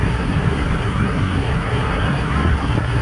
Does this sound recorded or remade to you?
remade